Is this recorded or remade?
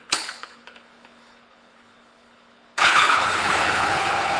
remade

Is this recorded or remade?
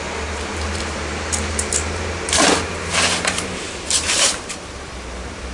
remade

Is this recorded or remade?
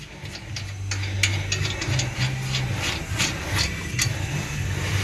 recorded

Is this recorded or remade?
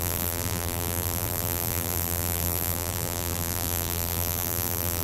remade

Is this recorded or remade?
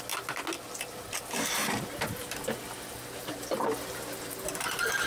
recorded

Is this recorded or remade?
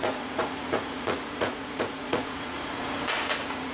remade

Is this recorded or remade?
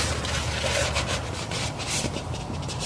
recorded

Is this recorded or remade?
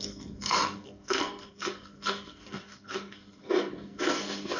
remade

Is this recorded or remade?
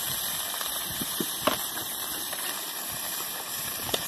remade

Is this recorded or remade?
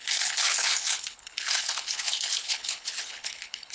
remade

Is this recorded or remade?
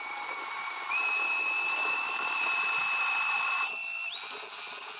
recorded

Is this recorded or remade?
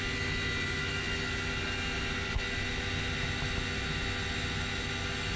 recorded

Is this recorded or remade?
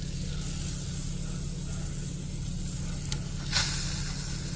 recorded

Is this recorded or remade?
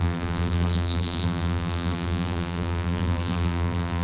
remade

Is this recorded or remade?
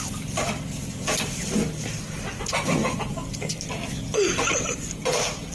recorded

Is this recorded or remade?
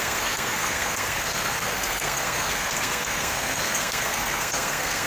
remade